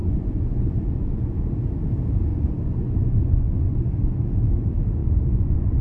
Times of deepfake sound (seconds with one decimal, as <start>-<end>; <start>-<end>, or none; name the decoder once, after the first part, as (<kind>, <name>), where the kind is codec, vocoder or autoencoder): 0.0-1.4 (vocoder, Vocos); 2.3-4.2; 5.0-5.8